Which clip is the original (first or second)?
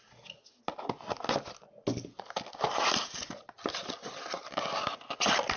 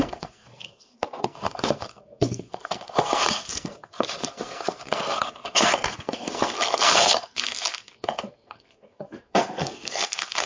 first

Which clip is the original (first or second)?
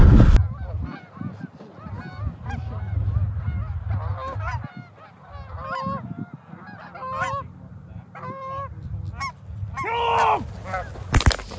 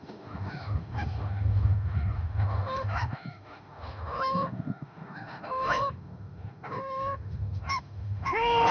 first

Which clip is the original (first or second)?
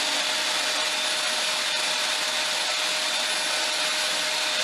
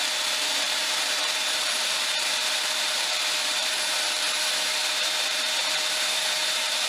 first